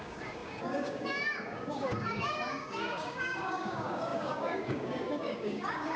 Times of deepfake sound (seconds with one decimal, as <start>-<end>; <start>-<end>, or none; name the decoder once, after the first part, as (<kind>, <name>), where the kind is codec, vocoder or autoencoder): 0.0-6.0 (codec, DAC)